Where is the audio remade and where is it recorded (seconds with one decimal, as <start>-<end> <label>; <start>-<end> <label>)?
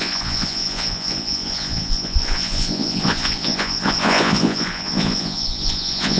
0.0-6.2 remade